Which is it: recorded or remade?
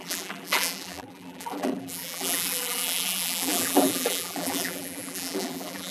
remade